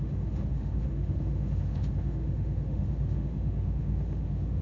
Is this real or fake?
fake